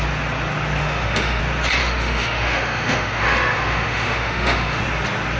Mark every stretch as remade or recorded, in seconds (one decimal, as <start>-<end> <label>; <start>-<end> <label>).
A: 0.0-0.8 recorded; 0.8-1.4 remade; 1.4-1.8 recorded; 1.8-4.8 remade; 4.8-5.4 recorded